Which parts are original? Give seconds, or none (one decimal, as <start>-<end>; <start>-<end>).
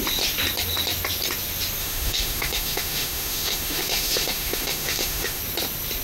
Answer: 0.0-1.8; 5.4-6.0